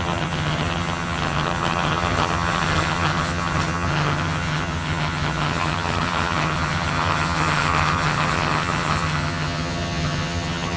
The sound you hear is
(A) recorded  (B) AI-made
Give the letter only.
B